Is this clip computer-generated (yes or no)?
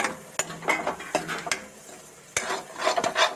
no